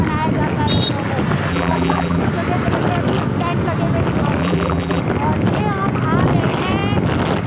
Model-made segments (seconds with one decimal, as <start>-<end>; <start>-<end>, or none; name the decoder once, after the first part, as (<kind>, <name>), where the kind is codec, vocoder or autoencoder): 1.5-2.2 (vocoder, BigVGAN v2); 4.4-5.0